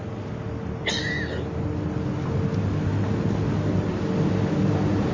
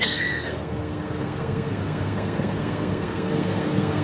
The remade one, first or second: second